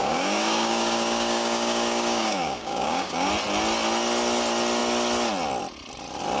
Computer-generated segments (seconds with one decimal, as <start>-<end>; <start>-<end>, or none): 0.0-3.3